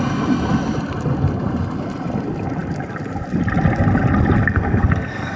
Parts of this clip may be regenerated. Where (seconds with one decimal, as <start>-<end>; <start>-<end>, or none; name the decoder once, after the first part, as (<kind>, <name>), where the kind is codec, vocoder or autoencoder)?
4.5-5.4 (codec, SNAC)